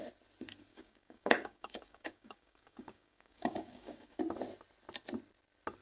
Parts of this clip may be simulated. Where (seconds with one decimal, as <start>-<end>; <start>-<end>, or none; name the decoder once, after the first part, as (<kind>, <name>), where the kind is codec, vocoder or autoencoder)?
0.7-4.2 (codec, DAC)